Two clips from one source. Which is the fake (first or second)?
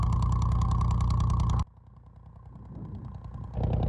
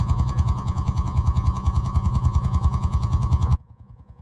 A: second